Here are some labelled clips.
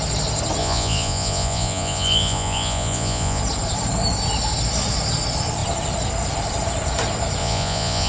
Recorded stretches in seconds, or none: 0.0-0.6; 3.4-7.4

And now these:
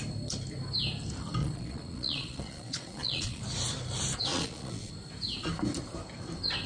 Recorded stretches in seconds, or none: 0.0-1.4; 3.4-4.3; 4.9-6.7

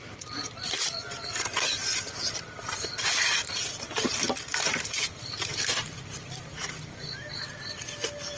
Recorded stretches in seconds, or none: 0.0-8.4

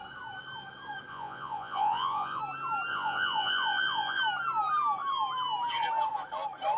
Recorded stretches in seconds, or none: 0.0-1.1; 2.4-2.9; 4.2-6.8